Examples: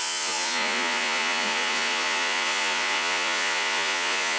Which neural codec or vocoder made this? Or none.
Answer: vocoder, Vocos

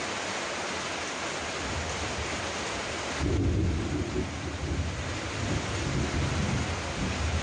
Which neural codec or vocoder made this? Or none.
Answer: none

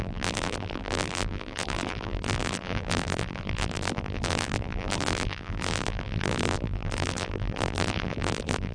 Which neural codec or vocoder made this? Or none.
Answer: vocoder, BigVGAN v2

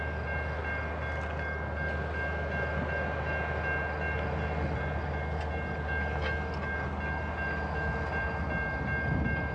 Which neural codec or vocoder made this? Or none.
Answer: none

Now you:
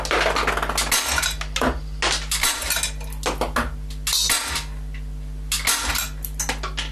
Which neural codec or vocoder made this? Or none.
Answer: none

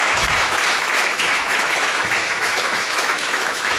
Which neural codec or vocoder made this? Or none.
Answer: autoencoder, DAC-VAE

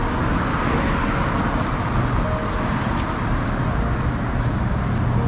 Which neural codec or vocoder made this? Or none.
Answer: none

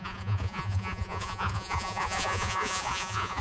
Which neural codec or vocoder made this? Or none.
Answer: vocoder, Vocos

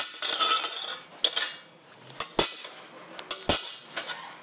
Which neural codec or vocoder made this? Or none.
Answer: none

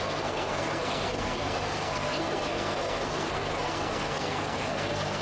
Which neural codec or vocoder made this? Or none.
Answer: codec, SNAC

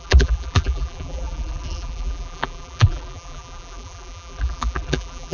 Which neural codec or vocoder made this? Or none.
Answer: vocoder, BigVGAN v2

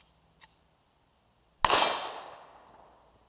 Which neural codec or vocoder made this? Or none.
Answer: none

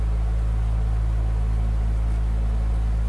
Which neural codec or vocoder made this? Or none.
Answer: none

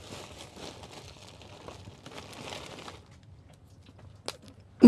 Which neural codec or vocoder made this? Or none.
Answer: none